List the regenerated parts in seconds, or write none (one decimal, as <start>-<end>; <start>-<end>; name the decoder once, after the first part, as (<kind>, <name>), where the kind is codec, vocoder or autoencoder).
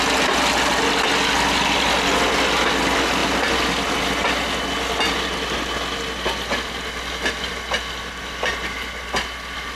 3.2-4.0 (vocoder, BigVGAN v2)